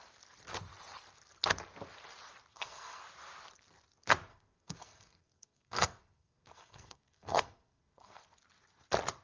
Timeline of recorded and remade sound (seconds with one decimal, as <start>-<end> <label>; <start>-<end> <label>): 0.0-2.5 recorded; 2.5-3.0 remade; 3.0-4.3 recorded; 4.3-8.2 remade; 8.2-9.2 recorded